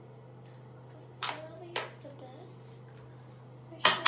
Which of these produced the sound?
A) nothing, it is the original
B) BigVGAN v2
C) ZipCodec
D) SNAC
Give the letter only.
A